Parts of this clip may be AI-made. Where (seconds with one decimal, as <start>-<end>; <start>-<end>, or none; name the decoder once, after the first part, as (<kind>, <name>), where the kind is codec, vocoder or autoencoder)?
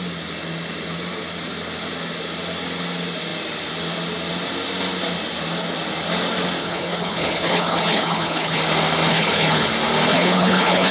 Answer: 6.6-8.6 (codec, HILCodec); 9.1-9.7; 10.1-10.9